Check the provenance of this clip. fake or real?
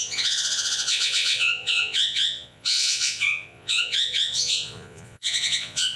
fake